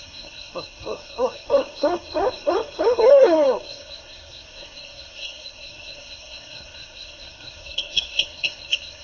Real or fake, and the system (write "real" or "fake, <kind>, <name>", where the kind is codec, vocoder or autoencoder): fake, codec, SNAC